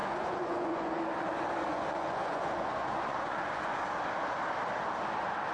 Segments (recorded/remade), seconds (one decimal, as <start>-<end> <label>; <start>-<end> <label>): 0.0-0.9 remade; 0.9-1.7 recorded; 1.7-3.8 remade; 3.8-5.5 recorded